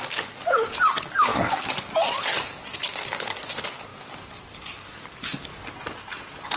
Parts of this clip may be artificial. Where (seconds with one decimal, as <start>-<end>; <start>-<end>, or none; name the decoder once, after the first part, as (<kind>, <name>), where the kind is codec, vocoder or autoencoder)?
0.0-5.5 (codec, DAC)